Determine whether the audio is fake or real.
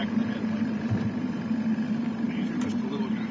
fake